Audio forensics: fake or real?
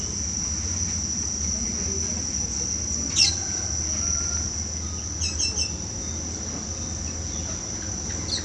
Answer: real